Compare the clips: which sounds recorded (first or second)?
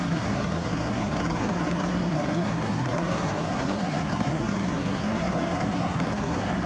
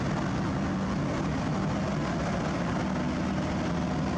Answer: second